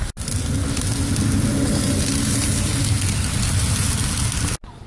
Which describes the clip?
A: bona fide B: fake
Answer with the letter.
A